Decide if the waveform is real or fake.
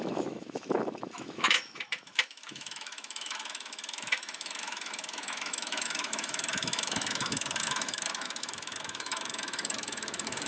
fake